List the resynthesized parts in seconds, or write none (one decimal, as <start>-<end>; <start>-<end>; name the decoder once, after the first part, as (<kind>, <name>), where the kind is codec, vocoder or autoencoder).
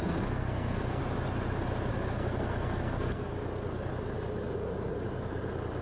0.0-1.0 (codec, SNAC); 1.9-3.3